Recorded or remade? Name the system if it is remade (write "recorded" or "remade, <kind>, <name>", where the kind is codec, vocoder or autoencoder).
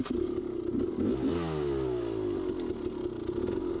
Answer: recorded